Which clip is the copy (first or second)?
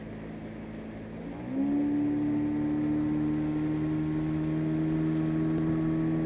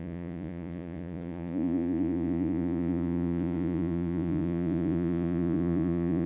second